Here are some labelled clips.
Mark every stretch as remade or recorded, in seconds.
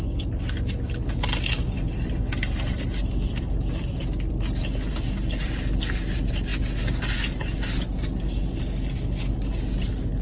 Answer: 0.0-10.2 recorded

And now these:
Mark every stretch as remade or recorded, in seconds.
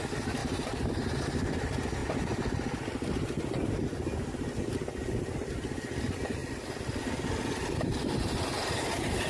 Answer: 0.0-0.4 recorded; 0.4-0.9 remade; 0.9-9.3 recorded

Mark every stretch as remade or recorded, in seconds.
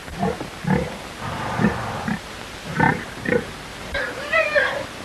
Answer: 0.0-5.0 recorded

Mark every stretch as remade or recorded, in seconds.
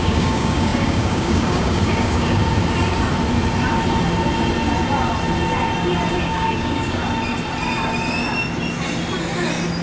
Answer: 0.0-2.4 remade; 2.4-6.2 recorded; 6.2-7.0 remade; 7.0-9.8 recorded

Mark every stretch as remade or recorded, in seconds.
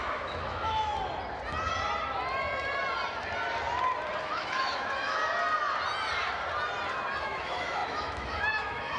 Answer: 0.0-0.9 remade; 0.9-4.2 recorded; 4.2-5.2 remade; 5.2-7.2 recorded; 7.2-9.0 remade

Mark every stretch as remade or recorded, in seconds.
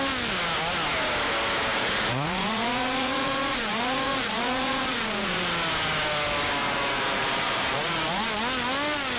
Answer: 0.0-1.7 recorded; 1.7-5.4 remade; 5.4-6.6 recorded; 6.6-8.3 remade; 8.3-9.2 recorded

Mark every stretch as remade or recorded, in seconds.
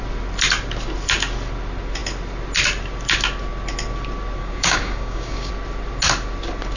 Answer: 0.0-4.4 recorded; 4.4-5.5 remade; 5.5-6.8 recorded